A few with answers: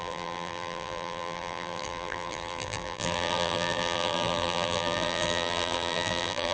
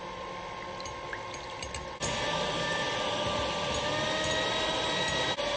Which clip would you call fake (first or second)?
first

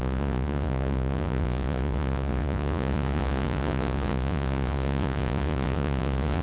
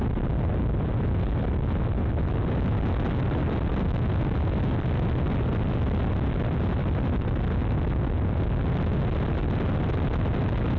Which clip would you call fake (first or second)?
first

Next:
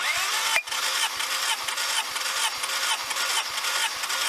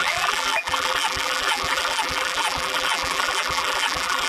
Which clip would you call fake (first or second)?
second